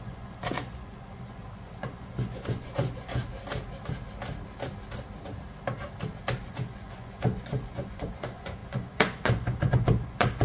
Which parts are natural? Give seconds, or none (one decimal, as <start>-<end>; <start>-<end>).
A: 3.2-6.4